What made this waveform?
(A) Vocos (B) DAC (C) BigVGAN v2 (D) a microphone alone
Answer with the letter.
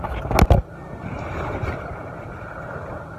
D